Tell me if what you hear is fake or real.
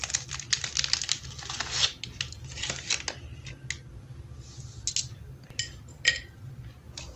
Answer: real